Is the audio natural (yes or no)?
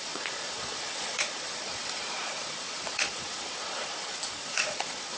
no